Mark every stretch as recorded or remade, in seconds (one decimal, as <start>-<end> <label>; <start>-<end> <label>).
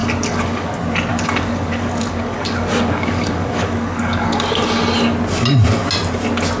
0.0-0.7 remade; 0.7-1.1 recorded; 1.1-4.6 remade; 4.6-6.6 recorded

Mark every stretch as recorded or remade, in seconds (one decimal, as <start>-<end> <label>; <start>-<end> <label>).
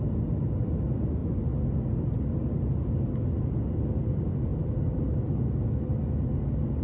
0.0-6.8 recorded